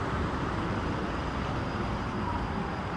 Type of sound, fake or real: real